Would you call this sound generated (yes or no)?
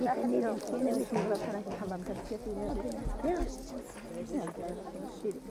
no